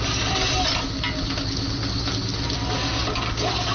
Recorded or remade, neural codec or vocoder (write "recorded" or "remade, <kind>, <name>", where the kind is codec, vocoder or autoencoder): recorded